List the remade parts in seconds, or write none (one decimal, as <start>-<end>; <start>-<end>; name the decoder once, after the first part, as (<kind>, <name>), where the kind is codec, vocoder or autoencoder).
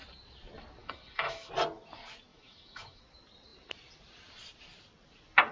0.8-1.5 (autoencoder, DAC-VAE); 2.3-3.0